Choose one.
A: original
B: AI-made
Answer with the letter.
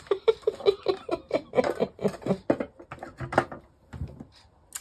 A